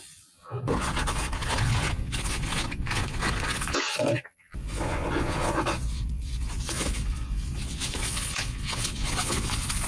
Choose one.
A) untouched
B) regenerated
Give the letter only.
B